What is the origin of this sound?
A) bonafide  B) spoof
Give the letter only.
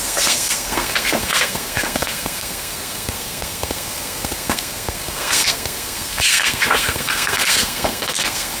B